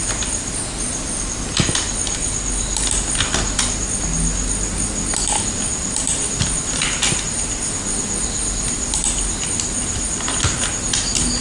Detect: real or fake real